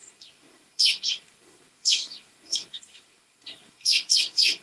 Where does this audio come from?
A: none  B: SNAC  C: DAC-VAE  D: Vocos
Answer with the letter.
B